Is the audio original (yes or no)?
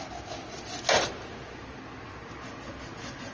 yes